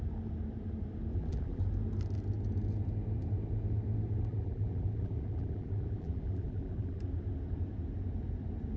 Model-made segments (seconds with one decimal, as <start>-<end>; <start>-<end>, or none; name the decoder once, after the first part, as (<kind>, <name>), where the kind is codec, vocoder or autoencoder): 1.1-1.6 (vocoder, BigVGAN v2); 4.3-7.0